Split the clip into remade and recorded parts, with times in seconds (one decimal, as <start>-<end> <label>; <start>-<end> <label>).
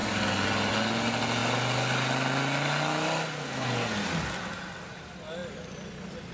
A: 0.0-6.3 recorded